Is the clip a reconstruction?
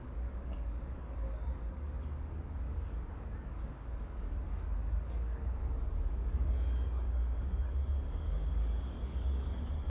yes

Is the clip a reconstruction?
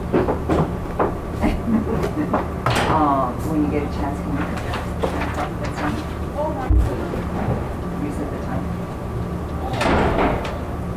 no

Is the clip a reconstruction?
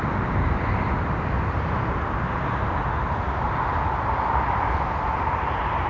no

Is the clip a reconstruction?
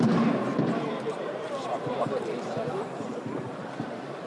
yes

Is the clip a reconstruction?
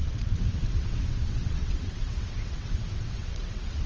yes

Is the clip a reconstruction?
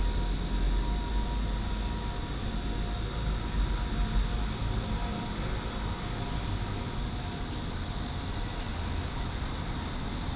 no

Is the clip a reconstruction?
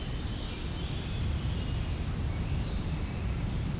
no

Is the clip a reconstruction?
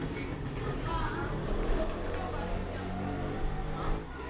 no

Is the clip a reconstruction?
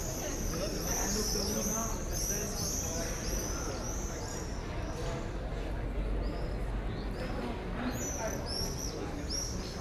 no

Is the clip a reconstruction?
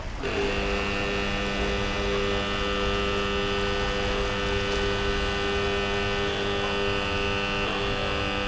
no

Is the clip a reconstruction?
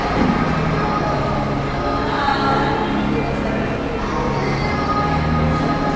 no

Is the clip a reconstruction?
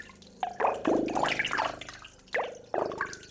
no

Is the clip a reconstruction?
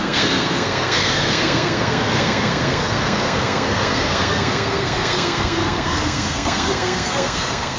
yes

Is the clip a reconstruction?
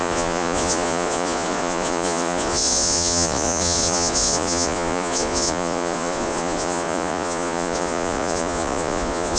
yes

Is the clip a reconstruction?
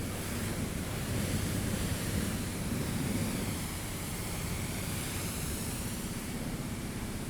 yes